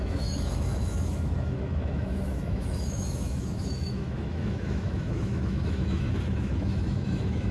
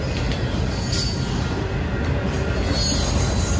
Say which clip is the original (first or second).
second